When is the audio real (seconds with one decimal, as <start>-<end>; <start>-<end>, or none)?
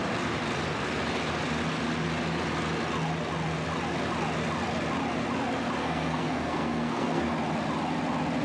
0.0-5.8; 7.2-8.4